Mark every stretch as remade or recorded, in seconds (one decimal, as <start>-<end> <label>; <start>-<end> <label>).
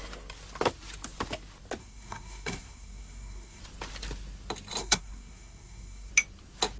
0.0-1.8 recorded; 1.8-3.6 remade; 3.6-4.8 recorded; 4.8-6.1 remade; 6.1-6.8 recorded